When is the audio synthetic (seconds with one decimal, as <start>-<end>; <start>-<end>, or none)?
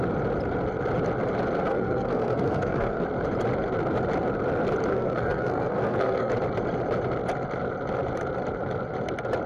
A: 1.7-3.0; 4.9-6.3